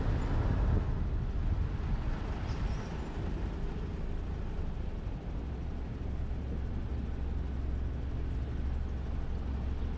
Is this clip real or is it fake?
real